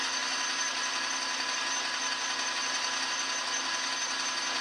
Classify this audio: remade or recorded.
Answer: recorded